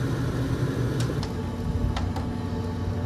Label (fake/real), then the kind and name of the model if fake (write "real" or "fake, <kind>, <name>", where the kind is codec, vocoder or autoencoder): real